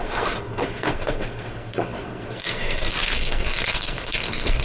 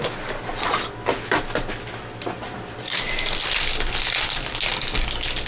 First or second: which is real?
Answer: second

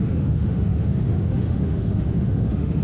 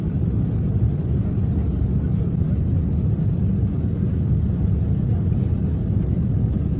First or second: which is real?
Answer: second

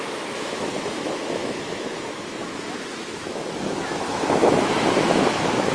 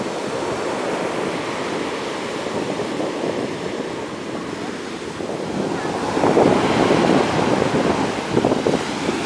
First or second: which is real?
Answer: second